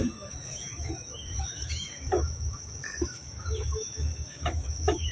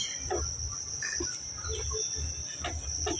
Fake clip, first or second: first